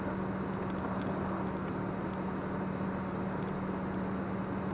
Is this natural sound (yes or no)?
yes